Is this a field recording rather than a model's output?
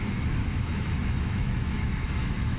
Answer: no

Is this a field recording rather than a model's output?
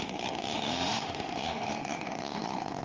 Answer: no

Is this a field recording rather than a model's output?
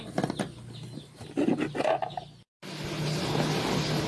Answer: yes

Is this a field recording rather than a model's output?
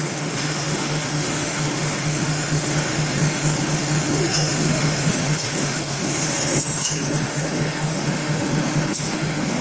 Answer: no